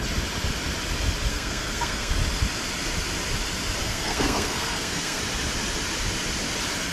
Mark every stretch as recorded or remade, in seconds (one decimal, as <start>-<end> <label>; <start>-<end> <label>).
0.0-1.3 recorded; 1.3-2.1 remade; 2.1-3.8 recorded; 3.8-5.2 remade; 5.2-6.9 recorded